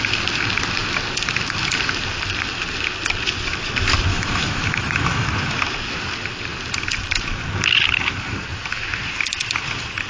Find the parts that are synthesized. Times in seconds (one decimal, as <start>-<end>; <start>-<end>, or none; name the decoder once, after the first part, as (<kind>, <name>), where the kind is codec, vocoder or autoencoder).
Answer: 4.1-5.3 (autoencoder, DAC-VAE)